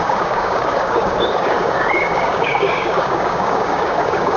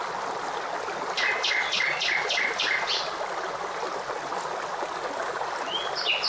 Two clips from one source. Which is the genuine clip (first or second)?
second